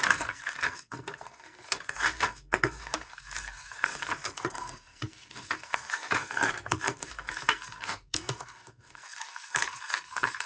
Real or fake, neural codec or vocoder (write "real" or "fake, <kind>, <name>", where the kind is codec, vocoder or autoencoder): fake, codec, SNAC